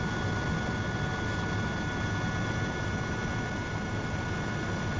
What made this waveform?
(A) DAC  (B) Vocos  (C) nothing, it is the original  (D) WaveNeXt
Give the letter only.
C